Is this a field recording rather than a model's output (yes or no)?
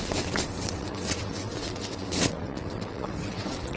no